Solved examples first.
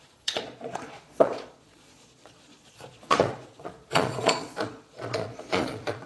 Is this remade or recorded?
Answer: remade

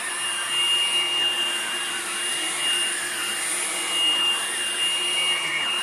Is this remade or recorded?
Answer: recorded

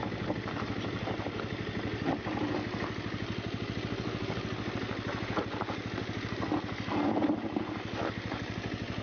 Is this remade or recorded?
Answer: recorded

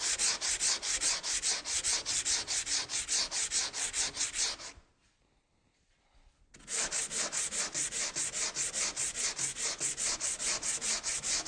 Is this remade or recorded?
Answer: recorded